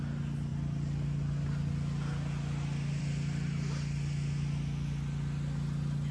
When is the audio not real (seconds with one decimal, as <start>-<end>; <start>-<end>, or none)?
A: none